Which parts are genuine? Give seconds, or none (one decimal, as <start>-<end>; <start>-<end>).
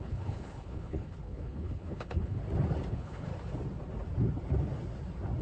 2.4-2.9; 3.3-5.4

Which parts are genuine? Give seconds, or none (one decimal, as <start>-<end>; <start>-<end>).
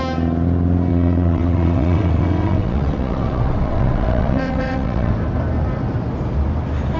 0.0-0.9; 5.1-7.0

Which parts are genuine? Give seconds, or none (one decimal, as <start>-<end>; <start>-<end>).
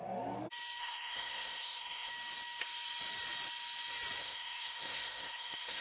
0.0-0.8; 2.1-4.2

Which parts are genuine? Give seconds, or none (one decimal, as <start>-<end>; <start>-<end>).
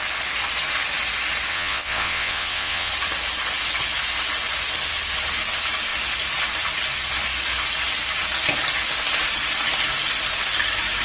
0.0-1.5; 2.9-11.0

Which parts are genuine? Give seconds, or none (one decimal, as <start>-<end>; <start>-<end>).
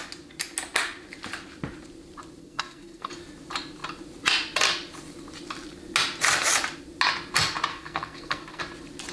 0.0-2.4; 3.1-7.7; 8.6-9.1